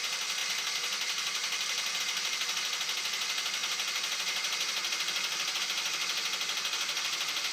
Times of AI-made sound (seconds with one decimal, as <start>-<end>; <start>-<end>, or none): none